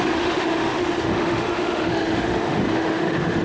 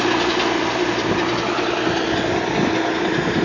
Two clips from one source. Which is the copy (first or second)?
first